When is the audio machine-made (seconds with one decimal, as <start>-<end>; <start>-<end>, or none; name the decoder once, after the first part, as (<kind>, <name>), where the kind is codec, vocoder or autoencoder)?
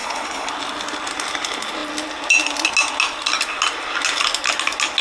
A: 0.0-0.5 (codec, HILCodec)